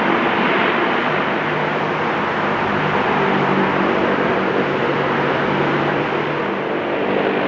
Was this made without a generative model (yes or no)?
yes